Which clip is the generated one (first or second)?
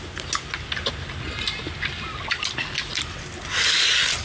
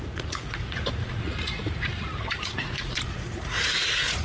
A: second